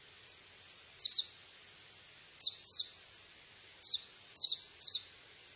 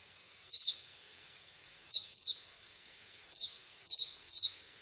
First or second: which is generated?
second